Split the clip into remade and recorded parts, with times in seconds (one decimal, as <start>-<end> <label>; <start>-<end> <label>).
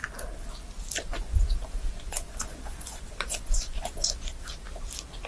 0.0-1.1 recorded; 1.1-4.3 remade; 4.3-5.3 recorded